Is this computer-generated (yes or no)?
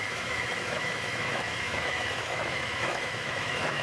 yes